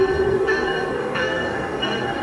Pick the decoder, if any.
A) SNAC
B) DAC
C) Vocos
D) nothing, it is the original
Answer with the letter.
A